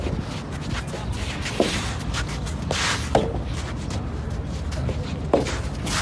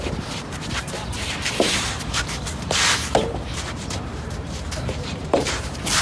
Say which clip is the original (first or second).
first